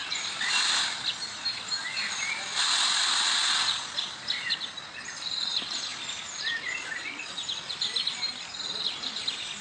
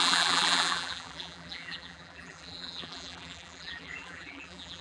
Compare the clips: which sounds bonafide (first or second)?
first